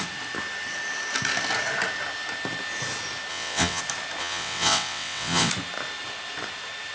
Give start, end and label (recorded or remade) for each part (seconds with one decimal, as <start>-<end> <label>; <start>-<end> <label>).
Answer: 0.0-3.3 recorded; 3.3-3.8 remade; 3.8-4.2 recorded; 4.2-5.5 remade; 5.5-6.9 recorded